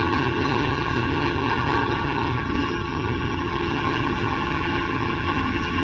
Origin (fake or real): fake